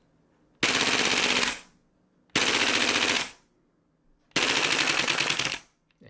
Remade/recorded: recorded